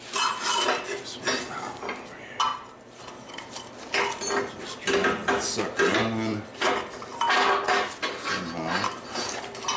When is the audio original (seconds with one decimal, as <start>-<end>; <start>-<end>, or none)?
0.0-9.8